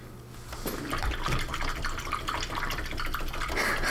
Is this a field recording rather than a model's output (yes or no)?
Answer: yes